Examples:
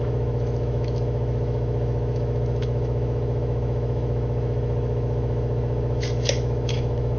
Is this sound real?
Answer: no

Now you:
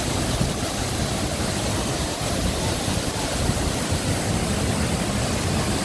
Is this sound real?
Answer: yes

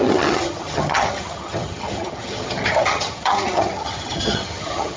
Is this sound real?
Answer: no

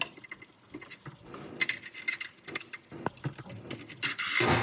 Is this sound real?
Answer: yes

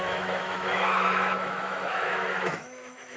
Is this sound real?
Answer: no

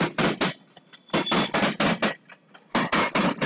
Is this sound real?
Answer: yes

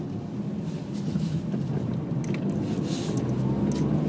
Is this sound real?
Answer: yes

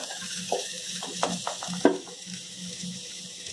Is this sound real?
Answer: no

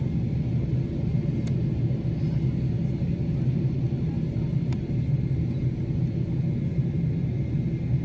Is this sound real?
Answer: yes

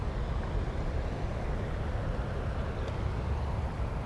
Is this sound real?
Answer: yes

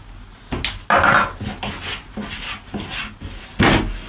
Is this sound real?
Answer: yes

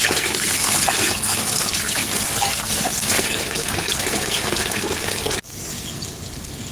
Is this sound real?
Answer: no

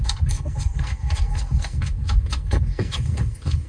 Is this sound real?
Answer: no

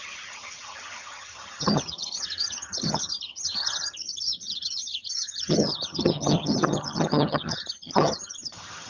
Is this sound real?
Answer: no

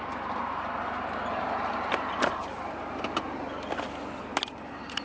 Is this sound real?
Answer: yes